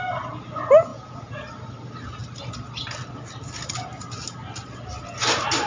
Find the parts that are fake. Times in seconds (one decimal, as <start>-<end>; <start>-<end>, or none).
0.9-1.4